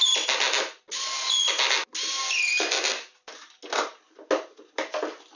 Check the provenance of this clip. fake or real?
real